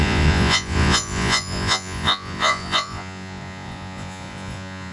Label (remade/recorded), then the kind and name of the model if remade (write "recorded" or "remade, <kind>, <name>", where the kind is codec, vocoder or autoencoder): remade, vocoder, Vocos